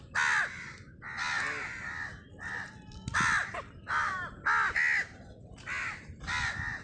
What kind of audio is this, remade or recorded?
recorded